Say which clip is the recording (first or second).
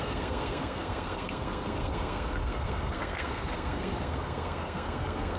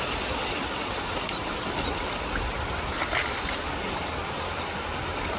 second